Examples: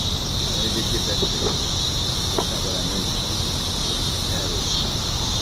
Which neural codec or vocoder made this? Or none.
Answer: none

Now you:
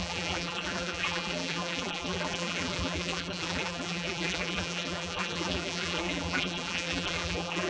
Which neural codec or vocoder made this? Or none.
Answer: vocoder, BigVGAN v2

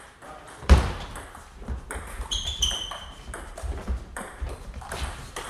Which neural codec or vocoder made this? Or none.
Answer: vocoder, BigVGAN v2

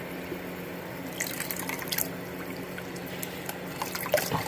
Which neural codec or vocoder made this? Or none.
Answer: vocoder, BigVGAN v2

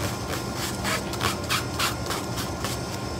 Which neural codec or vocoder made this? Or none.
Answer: none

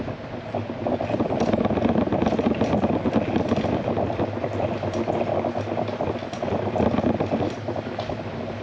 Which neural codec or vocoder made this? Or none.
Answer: none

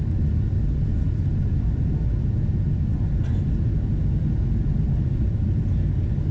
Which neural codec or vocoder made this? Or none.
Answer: none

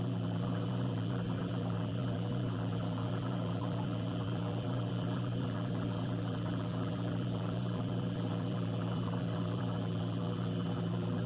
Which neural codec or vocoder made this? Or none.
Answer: vocoder, BigVGAN v2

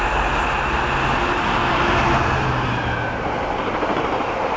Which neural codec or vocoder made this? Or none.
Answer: none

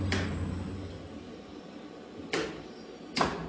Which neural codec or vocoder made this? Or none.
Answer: vocoder, BigVGAN v2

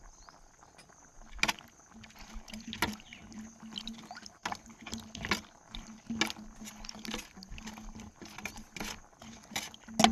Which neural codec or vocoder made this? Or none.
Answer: none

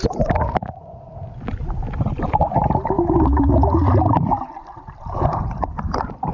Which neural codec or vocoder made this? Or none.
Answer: none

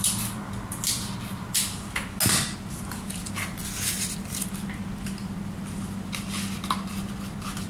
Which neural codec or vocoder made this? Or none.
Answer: none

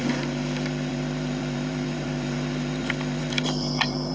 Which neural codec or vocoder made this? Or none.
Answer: vocoder, BigVGAN v2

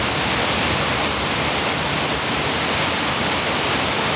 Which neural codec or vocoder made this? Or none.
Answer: none